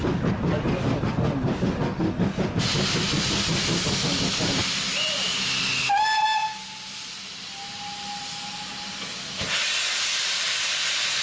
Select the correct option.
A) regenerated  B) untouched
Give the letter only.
B